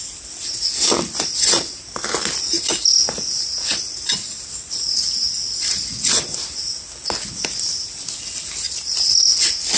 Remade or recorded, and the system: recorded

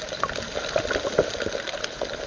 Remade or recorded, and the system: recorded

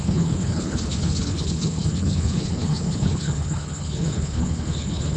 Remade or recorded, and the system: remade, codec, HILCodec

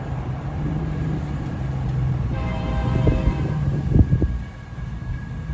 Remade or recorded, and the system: remade, vocoder, BigVGAN v2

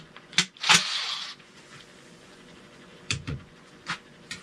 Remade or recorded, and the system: remade, vocoder, Vocos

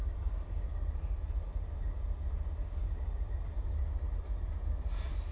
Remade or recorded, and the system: recorded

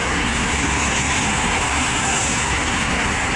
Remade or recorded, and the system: remade, codec, SNAC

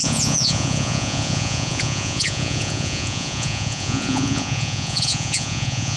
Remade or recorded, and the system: remade, vocoder, Vocos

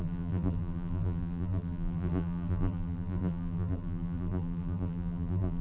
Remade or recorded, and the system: remade, vocoder, BigVGAN v2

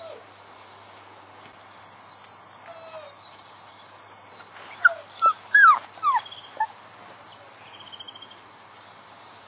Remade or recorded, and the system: recorded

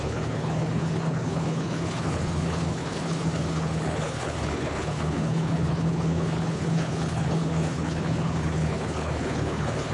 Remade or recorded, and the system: remade, codec, HILCodec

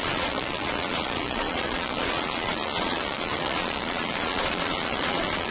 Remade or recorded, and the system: remade, vocoder, Vocos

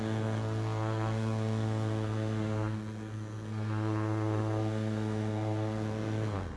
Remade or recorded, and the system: remade, codec, SNAC